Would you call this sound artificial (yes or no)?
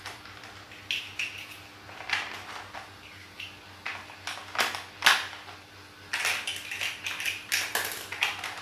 no